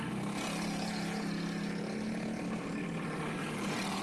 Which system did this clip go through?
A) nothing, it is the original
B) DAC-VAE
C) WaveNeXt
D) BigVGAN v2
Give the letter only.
A